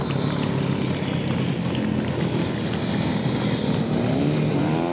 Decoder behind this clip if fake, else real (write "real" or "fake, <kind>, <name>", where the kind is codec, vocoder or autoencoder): real